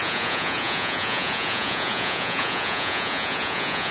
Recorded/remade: remade